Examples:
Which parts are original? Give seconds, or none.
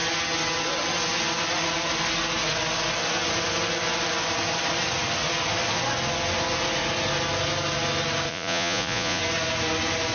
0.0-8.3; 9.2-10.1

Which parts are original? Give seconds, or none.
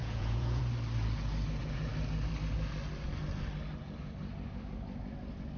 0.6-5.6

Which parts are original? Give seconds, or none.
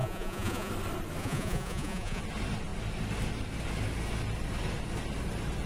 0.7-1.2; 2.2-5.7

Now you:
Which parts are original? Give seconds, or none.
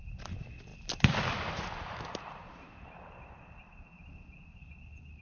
0.0-5.2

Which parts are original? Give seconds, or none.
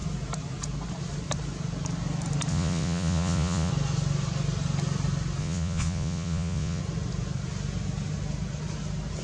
0.0-2.5; 3.7-5.4; 6.8-9.2